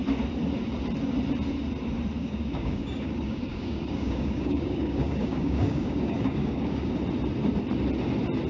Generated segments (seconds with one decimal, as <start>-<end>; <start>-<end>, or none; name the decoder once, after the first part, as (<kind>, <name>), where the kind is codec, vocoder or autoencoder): 2.2-6.9 (codec, DAC)